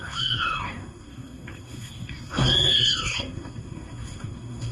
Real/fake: fake